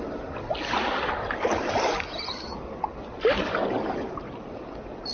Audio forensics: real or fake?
real